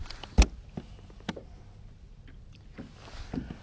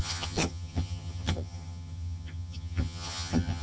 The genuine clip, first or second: first